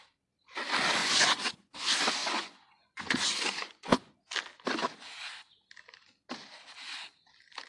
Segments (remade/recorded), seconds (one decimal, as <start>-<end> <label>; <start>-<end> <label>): 0.0-1.0 recorded; 1.0-1.7 remade; 1.7-2.2 recorded; 2.2-4.1 remade; 4.1-7.7 recorded